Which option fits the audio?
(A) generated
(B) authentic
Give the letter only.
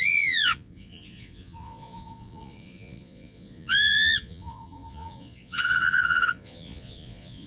A